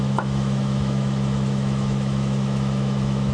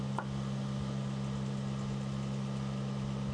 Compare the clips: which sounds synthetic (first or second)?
first